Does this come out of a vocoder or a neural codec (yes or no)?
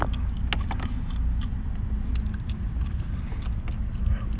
no